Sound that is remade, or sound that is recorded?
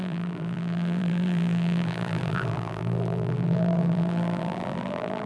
remade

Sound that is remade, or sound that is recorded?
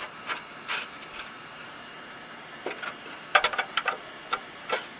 remade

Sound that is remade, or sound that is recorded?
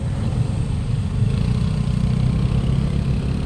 recorded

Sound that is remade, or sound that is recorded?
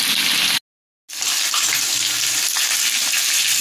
recorded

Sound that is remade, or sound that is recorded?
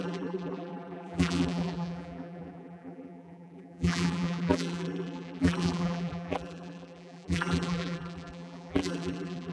remade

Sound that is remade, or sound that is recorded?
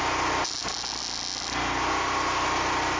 recorded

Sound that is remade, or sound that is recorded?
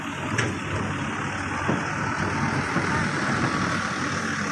recorded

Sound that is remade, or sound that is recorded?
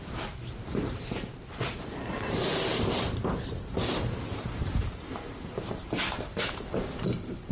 remade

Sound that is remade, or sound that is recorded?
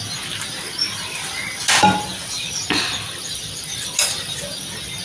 recorded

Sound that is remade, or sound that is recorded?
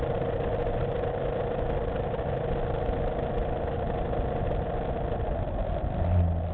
recorded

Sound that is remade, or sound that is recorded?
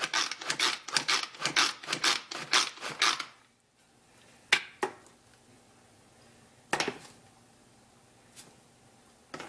recorded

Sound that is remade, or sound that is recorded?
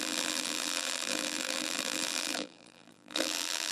remade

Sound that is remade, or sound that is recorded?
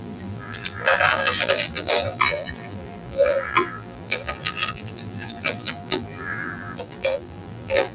remade